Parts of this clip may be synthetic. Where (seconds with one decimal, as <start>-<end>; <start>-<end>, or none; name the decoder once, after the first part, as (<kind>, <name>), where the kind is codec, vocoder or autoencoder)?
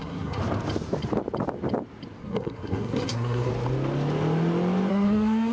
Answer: 0.0-0.4 (codec, SNAC); 2.2-3.5; 4.9-5.5